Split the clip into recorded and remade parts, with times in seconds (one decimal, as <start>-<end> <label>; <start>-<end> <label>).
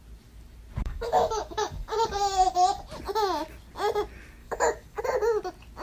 0.0-0.8 recorded; 0.8-2.8 remade; 2.8-4.4 recorded; 4.4-5.0 remade; 5.0-5.8 recorded